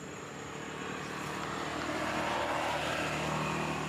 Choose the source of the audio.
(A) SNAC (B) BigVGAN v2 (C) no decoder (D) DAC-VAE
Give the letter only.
C